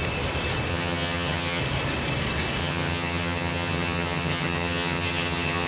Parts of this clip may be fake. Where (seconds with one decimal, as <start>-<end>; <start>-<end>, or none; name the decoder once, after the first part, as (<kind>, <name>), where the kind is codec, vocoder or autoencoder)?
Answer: 0.7-1.6 (vocoder, HiFi-GAN); 2.6-5.7